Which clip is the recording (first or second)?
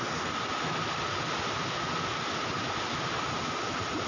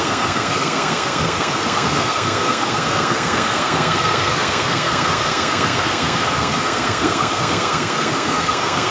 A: first